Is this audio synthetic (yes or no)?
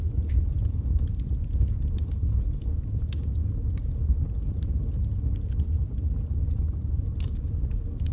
no